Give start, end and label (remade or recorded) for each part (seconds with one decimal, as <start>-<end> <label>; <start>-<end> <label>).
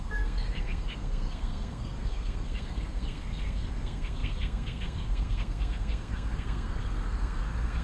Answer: 0.0-7.8 remade